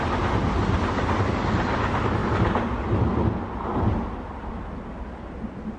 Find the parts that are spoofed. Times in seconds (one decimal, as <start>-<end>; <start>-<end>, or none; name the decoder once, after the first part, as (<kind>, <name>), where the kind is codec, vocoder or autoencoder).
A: none